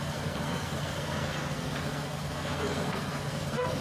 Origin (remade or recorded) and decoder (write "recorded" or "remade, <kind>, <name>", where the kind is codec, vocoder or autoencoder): remade, codec, SNAC